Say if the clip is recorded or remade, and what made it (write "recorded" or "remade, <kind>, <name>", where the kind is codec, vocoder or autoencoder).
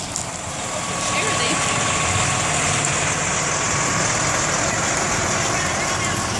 recorded